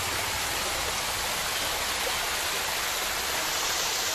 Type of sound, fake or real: real